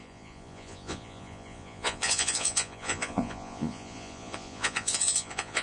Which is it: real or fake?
fake